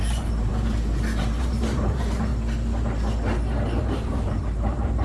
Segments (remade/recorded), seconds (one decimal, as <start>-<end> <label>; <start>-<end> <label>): 0.0-0.5 remade; 0.5-1.4 recorded; 1.4-2.3 remade; 2.3-3.8 recorded; 3.8-5.0 remade